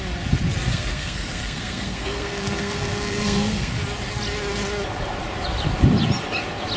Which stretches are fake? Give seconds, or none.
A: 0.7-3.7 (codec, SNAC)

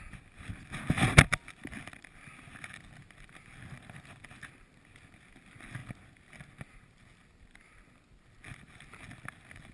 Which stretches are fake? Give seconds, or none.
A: none

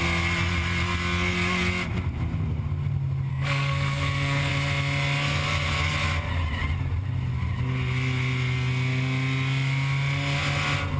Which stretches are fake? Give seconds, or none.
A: 3.3-4.5 (codec, SNAC)

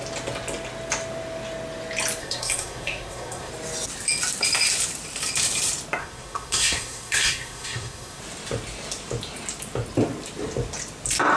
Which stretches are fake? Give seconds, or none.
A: 2.2-3.5 (codec, SNAC); 6.0-8.2